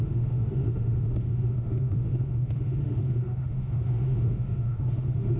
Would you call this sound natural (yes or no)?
no